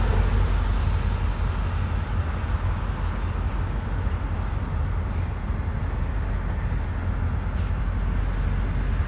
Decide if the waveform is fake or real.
real